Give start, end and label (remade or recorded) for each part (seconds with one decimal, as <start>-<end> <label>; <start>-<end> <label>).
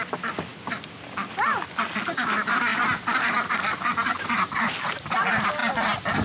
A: 0.0-6.2 recorded